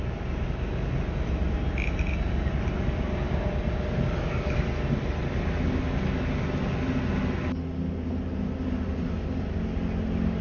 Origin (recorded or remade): recorded